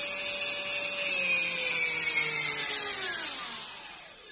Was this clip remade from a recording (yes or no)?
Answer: no